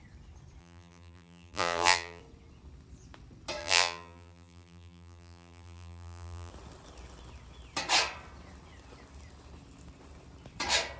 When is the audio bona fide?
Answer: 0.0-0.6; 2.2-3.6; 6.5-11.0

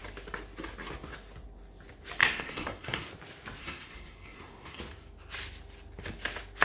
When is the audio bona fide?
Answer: 0.0-2.2; 3.1-3.6; 4.8-6.6

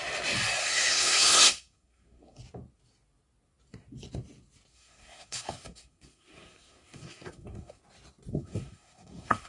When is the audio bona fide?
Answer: 0.0-0.6; 2.4-4.7; 7.8-8.3

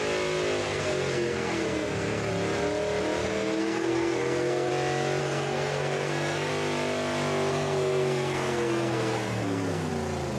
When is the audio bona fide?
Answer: 0.0-0.6; 2.3-3.2; 4.7-5.2; 6.5-7.5; 9.9-10.4

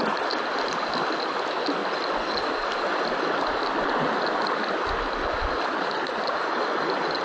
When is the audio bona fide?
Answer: 0.0-7.2

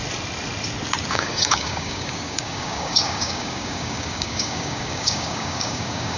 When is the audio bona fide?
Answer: 0.0-1.1

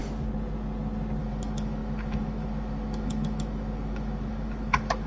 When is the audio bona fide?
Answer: 0.0-1.2

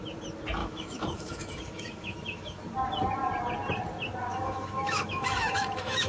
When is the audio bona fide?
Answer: 0.0-0.6; 2.6-4.3